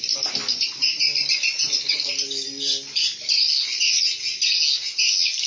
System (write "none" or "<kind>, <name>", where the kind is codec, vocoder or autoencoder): none